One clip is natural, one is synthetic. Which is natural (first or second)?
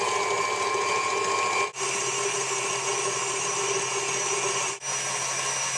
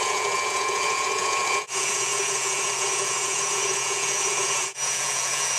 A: first